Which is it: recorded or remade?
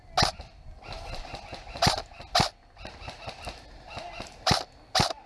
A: recorded